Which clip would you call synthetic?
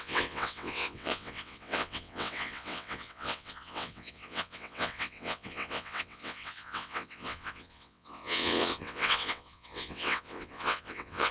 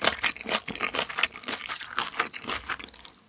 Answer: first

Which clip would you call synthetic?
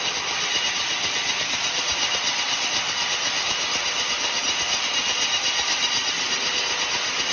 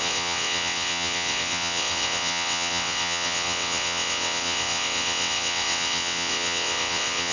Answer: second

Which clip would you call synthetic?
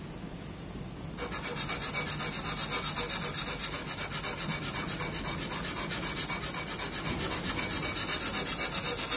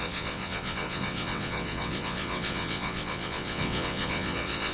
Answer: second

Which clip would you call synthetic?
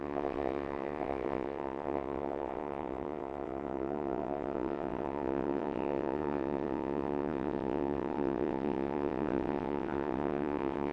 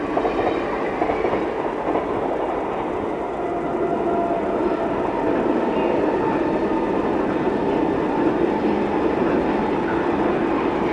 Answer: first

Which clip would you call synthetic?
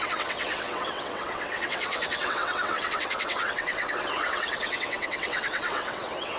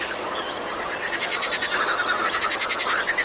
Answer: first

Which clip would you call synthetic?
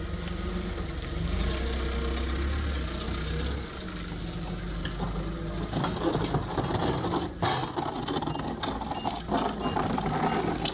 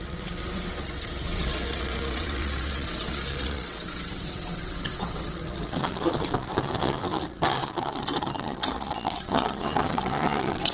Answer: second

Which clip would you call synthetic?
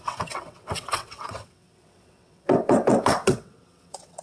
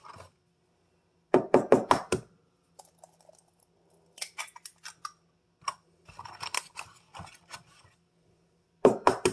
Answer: first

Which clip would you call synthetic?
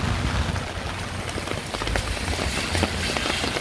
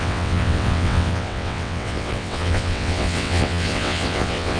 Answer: second